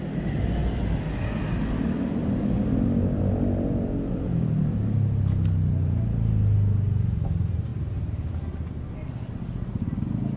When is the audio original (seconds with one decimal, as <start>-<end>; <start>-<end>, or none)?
0.0-10.4